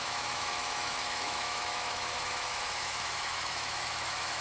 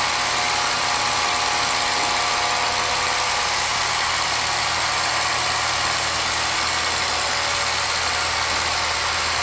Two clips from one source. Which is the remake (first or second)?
first